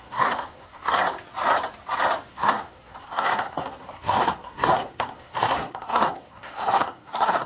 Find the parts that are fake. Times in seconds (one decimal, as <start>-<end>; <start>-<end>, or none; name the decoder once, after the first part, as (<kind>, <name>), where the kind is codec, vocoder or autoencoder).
0.0-1.0 (codec, SNAC); 2.3-7.5